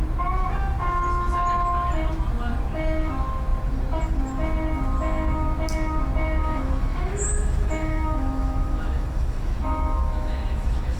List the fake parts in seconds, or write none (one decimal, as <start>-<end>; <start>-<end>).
6.4-11.0